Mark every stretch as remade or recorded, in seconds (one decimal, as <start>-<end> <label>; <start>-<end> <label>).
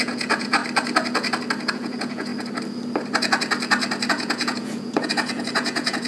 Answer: 0.0-0.6 remade; 0.6-1.7 recorded; 1.7-2.3 remade; 2.3-4.1 recorded; 4.1-6.1 remade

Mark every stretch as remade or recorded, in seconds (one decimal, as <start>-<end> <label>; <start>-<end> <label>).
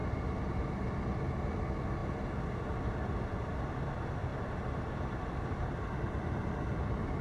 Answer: 0.0-0.9 remade; 0.9-2.0 recorded; 2.0-2.7 remade; 2.7-4.3 recorded; 4.3-5.4 remade; 5.4-7.2 recorded